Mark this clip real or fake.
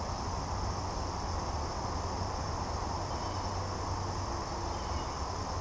real